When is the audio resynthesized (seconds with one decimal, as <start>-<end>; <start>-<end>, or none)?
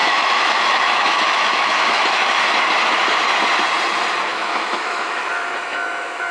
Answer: 0.0-2.4; 4.3-6.3